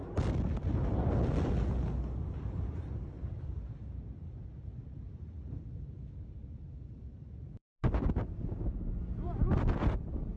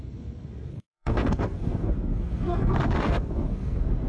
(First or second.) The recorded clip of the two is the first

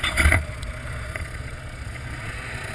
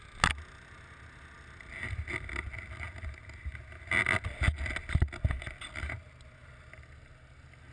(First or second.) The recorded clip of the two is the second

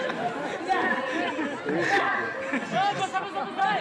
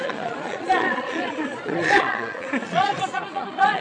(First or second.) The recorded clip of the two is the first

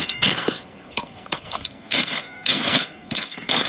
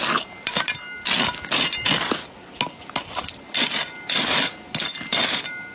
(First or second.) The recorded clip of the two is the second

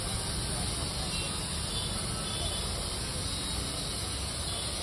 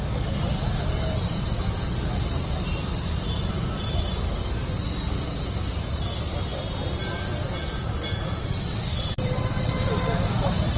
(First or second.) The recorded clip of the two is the first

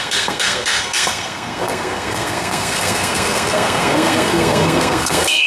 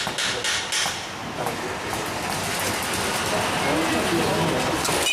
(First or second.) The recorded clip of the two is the second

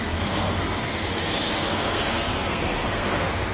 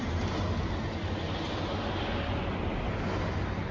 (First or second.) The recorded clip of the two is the second